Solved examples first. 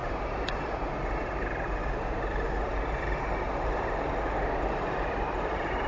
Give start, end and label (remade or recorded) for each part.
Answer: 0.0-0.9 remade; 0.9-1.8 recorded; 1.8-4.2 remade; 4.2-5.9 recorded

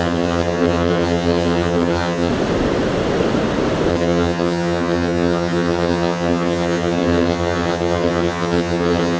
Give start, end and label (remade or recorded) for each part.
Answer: 0.0-2.3 remade; 2.3-3.9 recorded; 3.9-9.2 remade